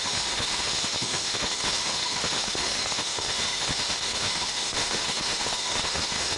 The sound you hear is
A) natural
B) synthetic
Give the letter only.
B